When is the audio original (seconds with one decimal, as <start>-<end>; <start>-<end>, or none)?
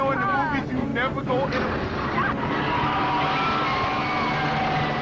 0.0-5.0